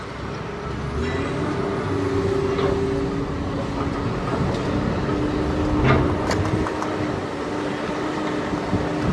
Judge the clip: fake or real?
real